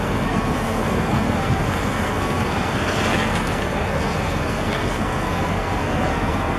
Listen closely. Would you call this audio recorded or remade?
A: remade